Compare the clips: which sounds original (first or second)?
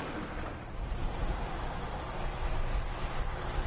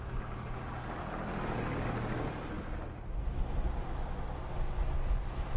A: second